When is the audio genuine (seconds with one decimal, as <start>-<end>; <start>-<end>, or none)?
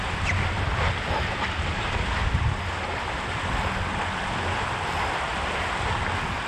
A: 0.0-6.5